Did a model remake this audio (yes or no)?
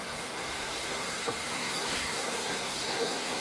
yes